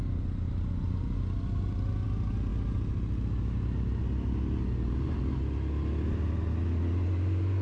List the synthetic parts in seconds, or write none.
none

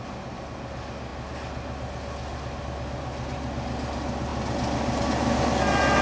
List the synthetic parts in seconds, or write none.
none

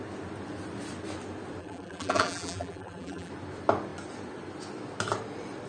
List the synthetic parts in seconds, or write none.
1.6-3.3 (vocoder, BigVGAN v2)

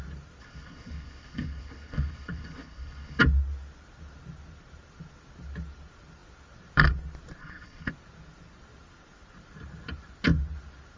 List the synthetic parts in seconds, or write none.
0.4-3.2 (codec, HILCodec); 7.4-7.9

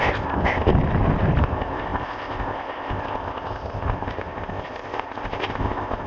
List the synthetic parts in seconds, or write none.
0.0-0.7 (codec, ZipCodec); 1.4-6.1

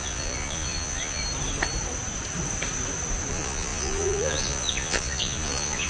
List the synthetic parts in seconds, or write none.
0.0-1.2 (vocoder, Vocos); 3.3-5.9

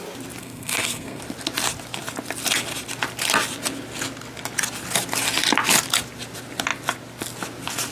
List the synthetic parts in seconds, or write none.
0.4-1.2 (codec, SNAC)

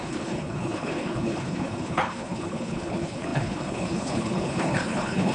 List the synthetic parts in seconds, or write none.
0.0-5.3 (codec, HILCodec)